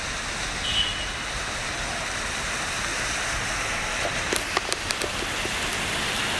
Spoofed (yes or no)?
no